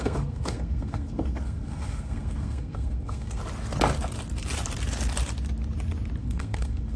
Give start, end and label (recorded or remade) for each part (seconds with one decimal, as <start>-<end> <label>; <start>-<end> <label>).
0.0-3.4 remade; 3.4-6.2 recorded; 6.2-7.0 remade